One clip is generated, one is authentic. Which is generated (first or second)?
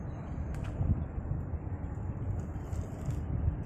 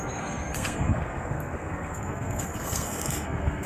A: second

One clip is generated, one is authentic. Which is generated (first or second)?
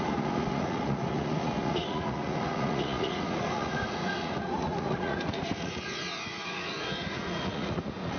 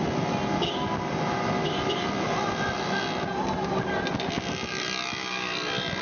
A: first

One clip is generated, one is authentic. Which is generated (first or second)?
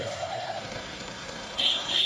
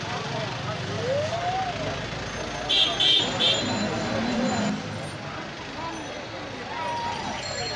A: first